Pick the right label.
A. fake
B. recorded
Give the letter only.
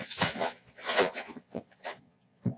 A